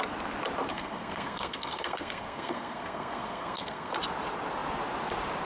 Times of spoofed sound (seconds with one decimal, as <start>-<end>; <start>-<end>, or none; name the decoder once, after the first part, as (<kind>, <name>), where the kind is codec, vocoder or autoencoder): 0.7-3.9 (codec, SNAC)

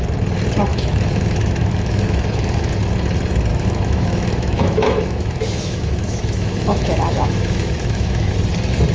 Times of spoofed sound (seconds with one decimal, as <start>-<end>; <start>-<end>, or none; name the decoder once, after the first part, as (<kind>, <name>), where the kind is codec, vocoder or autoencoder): 0.7-2.7 (autoencoder, DAC-VAE); 3.5-8.3

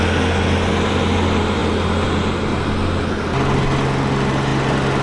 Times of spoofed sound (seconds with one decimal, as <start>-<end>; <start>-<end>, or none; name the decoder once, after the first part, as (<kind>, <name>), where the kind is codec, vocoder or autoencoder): none

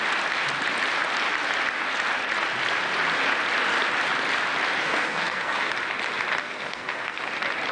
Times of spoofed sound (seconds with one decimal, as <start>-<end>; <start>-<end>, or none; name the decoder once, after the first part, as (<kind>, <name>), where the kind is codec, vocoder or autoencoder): 4.8-5.7 (codec, SNAC); 6.4-7.2

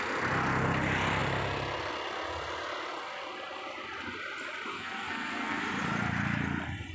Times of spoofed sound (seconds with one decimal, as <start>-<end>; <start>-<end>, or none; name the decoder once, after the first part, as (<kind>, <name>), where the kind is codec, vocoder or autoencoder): 4.7-5.6 (codec, SNAC)

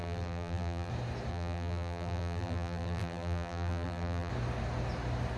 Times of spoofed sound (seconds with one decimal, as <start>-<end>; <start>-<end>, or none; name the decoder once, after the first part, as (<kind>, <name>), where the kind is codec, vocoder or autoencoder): 0.0-0.9 (vocoder, BigVGAN v2); 1.3-4.3